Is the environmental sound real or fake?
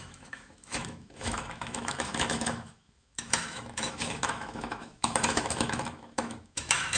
fake